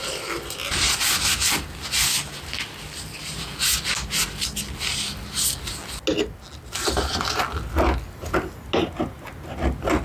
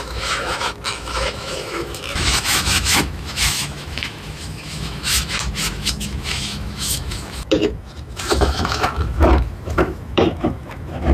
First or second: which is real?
first